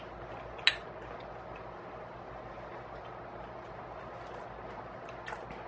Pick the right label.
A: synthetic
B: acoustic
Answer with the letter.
B